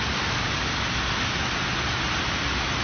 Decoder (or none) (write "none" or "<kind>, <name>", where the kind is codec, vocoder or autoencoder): none